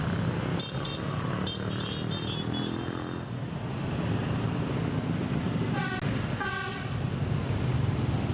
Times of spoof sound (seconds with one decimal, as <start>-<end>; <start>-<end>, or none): 5.2-5.8